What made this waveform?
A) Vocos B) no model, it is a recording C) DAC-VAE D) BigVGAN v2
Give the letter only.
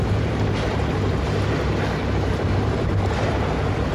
D